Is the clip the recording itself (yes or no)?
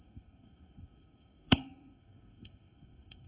no